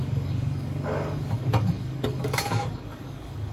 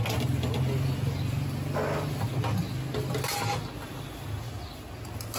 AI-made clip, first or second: first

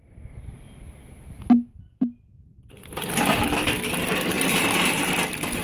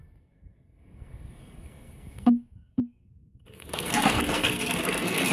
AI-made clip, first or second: second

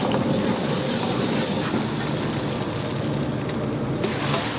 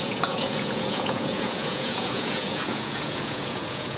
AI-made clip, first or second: second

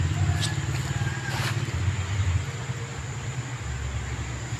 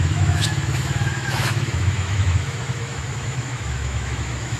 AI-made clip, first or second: second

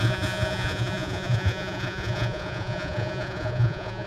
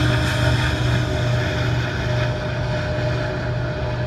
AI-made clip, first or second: first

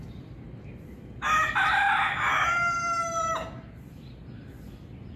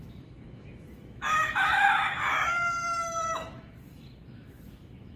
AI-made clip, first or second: second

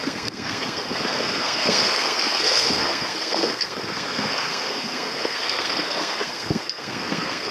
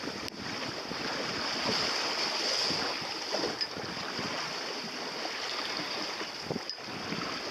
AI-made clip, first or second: first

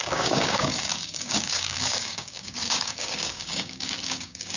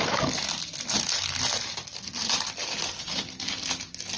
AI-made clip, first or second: first